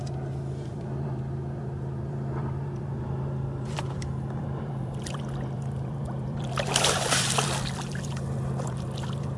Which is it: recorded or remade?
remade